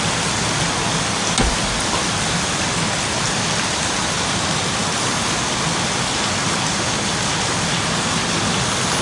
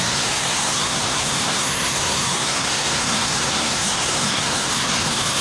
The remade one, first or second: second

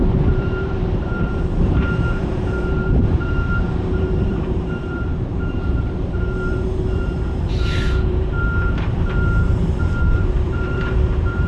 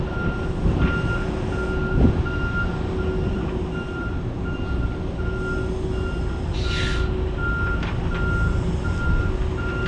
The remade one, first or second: first